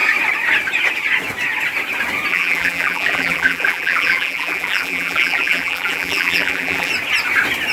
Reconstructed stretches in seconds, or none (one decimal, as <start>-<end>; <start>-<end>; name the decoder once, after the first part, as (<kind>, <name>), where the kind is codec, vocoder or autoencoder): 2.3-6.9 (vocoder, BigVGAN v2)